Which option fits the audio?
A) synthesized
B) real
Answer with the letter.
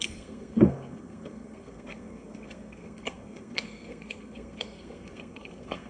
A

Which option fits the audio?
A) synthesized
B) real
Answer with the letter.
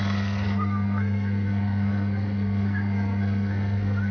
A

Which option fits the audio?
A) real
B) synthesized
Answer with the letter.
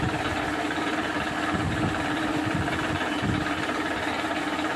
A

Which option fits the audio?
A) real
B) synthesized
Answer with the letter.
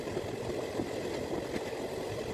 A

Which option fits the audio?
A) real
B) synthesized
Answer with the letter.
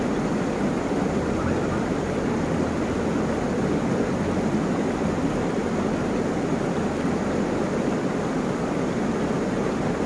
A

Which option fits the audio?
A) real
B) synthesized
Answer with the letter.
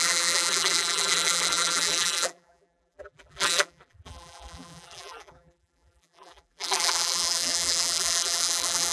B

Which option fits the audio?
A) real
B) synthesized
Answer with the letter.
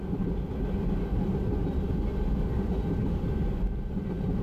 A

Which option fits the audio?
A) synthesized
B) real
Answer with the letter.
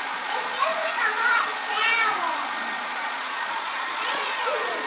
A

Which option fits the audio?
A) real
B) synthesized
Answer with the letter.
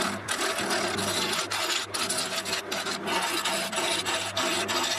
A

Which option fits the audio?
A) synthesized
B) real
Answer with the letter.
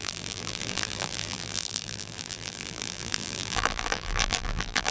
A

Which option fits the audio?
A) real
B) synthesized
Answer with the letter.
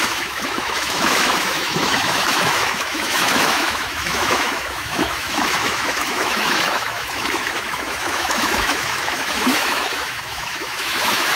B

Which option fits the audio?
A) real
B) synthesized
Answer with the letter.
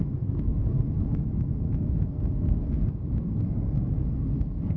B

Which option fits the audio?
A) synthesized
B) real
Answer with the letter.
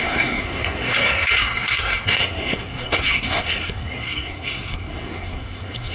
A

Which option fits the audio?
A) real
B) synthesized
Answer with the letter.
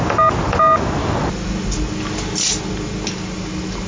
A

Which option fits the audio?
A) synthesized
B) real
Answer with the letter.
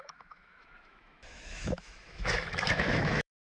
A